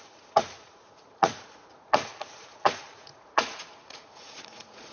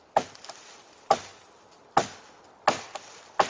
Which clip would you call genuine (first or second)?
second